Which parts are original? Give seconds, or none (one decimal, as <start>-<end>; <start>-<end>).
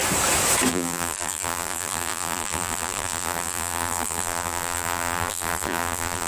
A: 0.0-0.7